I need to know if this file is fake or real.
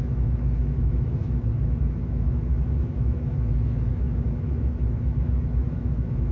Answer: fake